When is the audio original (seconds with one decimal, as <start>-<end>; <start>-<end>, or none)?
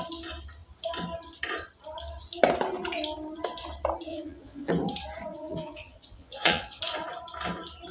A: 0.0-4.1; 4.7-5.3; 6.8-7.9